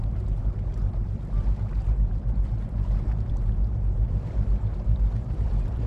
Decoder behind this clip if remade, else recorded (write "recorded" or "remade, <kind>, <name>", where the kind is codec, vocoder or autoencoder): remade, vocoder, BigVGAN v2